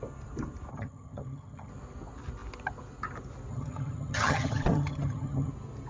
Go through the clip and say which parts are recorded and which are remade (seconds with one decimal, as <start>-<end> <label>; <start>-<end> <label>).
0.0-0.7 recorded; 0.7-1.7 remade; 1.7-3.5 recorded; 3.5-5.5 remade; 5.5-5.9 recorded